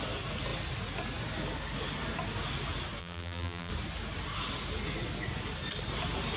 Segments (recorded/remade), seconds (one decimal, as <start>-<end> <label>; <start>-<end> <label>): 0.0-3.0 recorded; 3.0-3.7 remade; 3.7-6.4 recorded